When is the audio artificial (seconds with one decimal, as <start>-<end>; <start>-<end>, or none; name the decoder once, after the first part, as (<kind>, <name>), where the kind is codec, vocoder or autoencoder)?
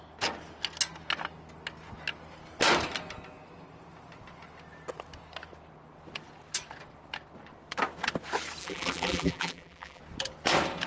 8.6-10.0 (vocoder, BigVGAN v2)